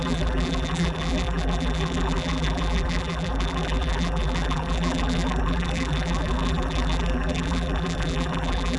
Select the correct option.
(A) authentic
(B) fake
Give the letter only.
B